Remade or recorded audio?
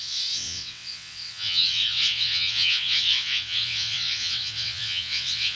remade